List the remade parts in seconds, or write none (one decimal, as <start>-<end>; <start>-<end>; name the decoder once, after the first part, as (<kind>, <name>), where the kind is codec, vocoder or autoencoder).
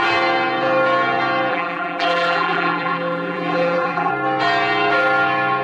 1.5-4.1 (vocoder, BigVGAN v2)